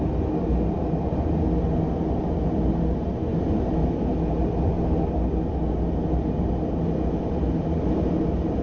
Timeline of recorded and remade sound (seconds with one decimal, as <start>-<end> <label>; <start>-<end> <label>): 0.0-8.6 recorded